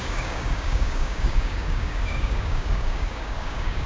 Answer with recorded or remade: remade